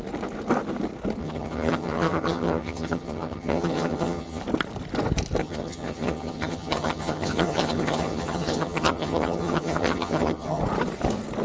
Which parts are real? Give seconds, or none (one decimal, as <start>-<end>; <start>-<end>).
0.0-1.2; 4.4-5.4; 10.6-11.4